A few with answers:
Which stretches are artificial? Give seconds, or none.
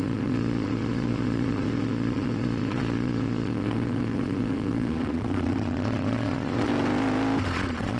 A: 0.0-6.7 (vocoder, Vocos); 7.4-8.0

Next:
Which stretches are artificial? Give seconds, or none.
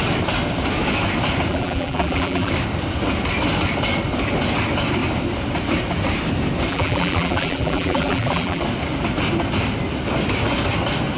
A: 1.5-2.5 (vocoder, BigVGAN v2); 6.7-8.6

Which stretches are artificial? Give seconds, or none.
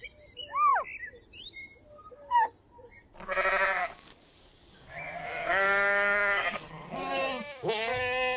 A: 3.8-7.2 (codec, DAC)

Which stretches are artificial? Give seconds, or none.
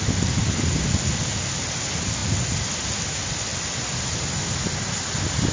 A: none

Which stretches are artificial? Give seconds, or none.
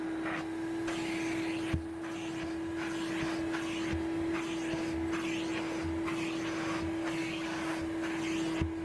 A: 7.2-7.7 (codec, DAC)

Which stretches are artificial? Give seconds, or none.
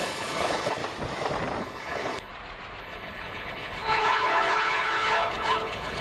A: 0.0-0.8 (codec, HILCodec); 1.6-2.3; 2.8-6.0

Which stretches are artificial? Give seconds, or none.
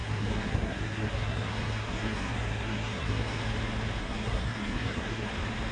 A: 0.0-3.4 (codec, SNAC); 4.0-5.3